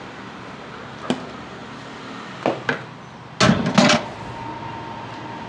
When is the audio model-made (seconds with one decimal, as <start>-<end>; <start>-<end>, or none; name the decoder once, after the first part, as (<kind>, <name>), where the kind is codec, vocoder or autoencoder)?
none